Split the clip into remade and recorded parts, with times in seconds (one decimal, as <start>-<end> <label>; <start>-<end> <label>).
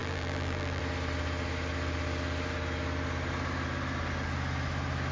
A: 0.0-0.8 remade; 0.8-5.1 recorded